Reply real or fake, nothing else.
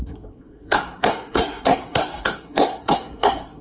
fake